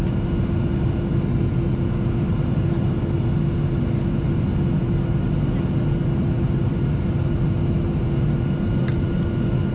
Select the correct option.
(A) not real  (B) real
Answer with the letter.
B